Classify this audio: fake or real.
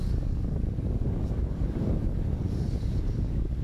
fake